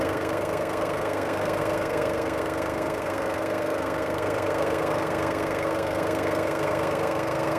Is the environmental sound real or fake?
fake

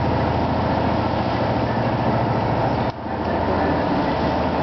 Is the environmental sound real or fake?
real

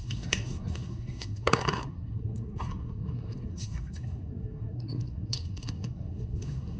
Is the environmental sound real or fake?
fake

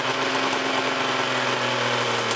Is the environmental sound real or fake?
real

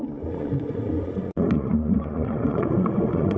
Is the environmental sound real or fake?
fake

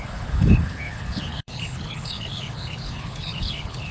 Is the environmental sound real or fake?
fake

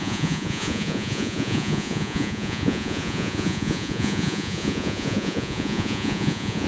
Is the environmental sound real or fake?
fake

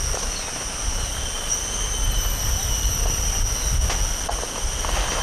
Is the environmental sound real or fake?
real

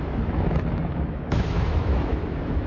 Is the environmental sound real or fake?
fake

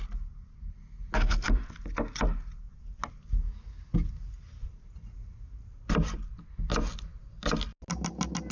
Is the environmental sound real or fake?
real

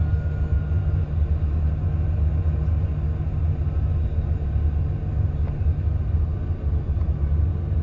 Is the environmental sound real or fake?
real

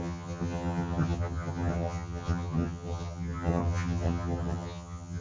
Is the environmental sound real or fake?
fake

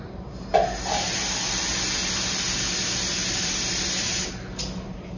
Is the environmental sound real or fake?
real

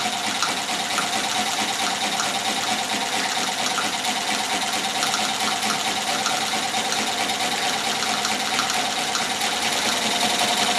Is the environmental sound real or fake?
real